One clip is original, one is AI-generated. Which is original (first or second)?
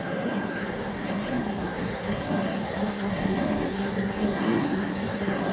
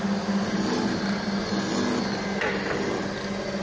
second